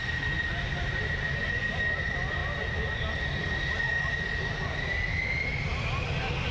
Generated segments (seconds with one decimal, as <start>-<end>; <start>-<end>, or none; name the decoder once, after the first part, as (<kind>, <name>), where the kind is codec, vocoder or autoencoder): 0.0-1.6 (vocoder, BigVGAN v2)